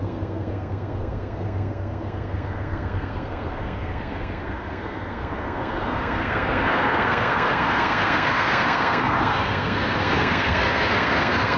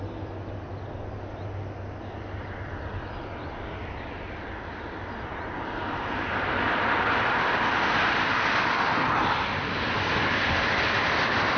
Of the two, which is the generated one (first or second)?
first